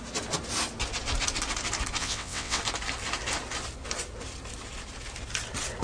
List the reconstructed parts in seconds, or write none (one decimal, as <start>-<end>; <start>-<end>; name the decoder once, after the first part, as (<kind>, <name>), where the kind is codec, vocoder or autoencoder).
2.0-2.6 (vocoder, WaveNeXt)